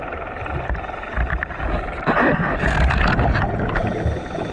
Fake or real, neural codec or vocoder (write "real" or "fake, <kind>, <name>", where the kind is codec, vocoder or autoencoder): real